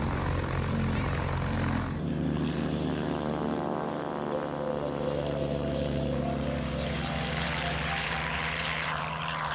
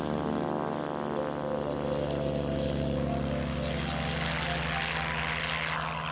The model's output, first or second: first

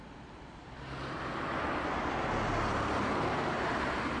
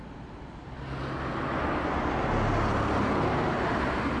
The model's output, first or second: first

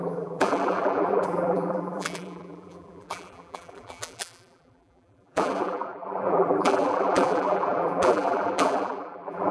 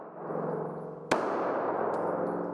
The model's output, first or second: first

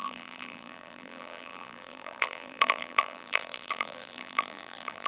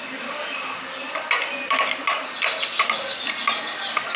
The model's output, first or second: first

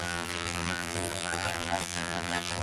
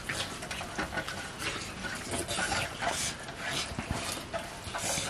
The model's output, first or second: first